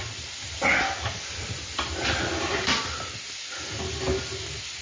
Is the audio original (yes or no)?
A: yes